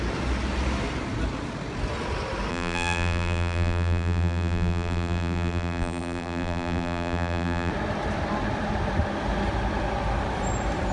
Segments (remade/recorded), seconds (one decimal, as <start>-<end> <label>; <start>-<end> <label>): 0.0-2.5 recorded; 2.5-7.7 remade; 7.7-10.9 recorded